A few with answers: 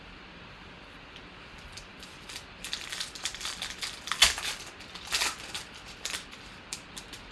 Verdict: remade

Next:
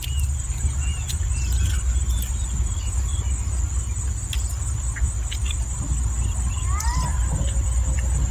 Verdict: recorded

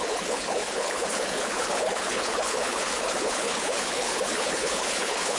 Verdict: remade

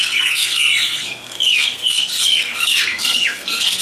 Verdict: remade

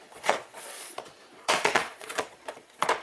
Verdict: remade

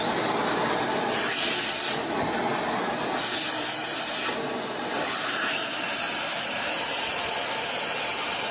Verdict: recorded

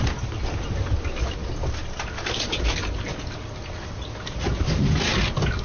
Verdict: recorded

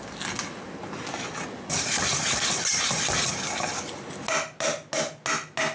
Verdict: recorded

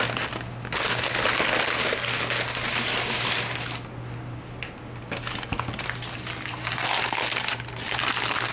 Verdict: recorded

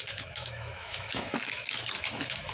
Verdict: remade